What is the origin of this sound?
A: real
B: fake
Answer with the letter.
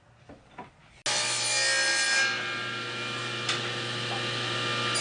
A